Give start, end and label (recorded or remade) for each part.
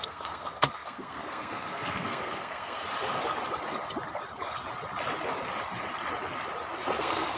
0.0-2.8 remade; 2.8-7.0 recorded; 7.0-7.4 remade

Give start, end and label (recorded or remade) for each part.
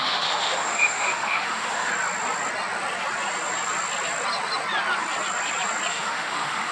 0.0-1.9 remade; 1.9-5.9 recorded; 5.9-6.7 remade